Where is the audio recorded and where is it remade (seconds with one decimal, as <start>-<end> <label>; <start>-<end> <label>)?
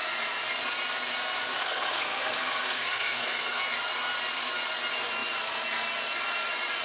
0.0-1.6 recorded; 1.6-3.6 remade; 3.6-6.8 recorded